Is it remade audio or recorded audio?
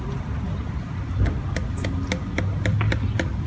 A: recorded